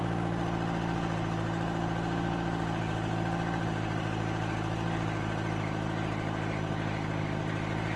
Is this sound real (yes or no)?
yes